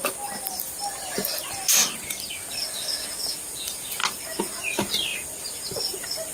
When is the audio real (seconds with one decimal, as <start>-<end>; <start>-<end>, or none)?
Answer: 0.0-6.3